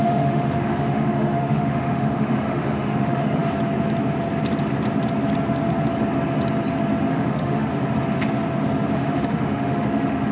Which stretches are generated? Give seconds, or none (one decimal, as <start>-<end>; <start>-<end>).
0.0-3.4; 7.1-7.7; 8.9-10.3